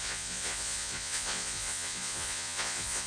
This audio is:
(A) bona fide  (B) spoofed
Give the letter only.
B